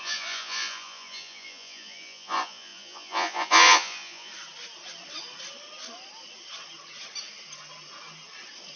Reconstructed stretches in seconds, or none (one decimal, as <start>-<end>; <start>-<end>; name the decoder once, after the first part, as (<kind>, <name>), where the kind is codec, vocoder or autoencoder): 0.0-4.3 (vocoder, Vocos)